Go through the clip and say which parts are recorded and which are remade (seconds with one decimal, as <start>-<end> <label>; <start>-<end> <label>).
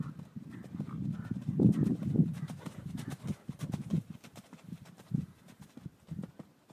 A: 0.0-1.9 recorded; 1.9-5.7 remade; 5.7-6.7 recorded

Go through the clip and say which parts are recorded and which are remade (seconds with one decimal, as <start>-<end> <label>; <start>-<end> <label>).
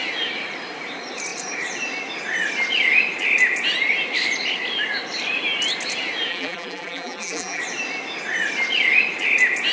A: 0.0-6.3 recorded; 6.3-7.6 remade; 7.6-9.7 recorded